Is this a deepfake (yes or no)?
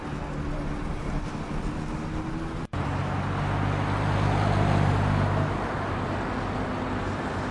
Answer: no